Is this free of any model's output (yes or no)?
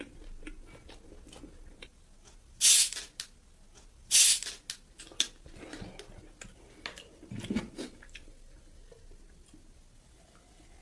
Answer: yes